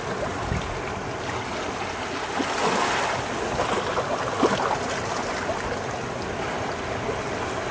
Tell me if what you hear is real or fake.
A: real